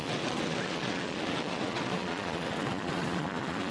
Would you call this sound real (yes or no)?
no